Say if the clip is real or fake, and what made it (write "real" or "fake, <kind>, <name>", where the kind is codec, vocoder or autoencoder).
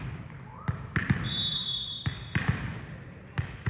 real